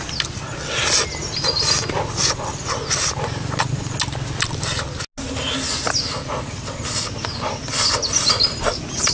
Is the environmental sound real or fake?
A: real